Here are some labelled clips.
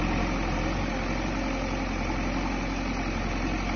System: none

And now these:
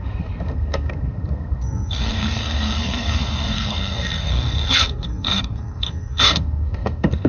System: codec, SNAC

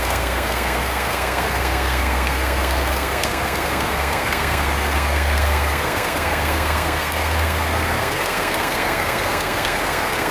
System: codec, SNAC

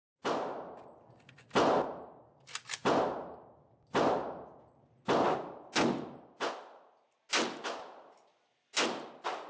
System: none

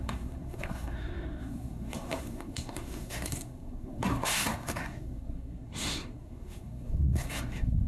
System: codec, SNAC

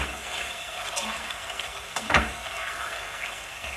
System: codec, SNAC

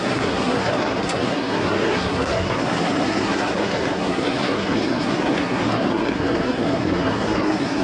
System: codec, SNAC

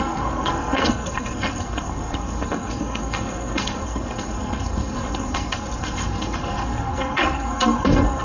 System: codec, SNAC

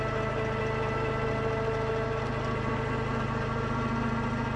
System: none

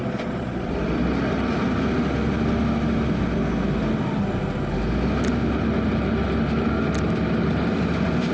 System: none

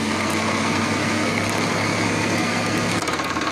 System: codec, SNAC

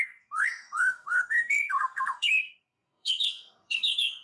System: codec, SNAC